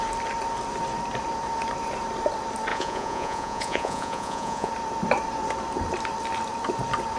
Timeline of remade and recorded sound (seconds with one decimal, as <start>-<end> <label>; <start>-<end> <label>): 0.0-2.7 recorded; 2.7-4.7 remade; 4.7-7.2 recorded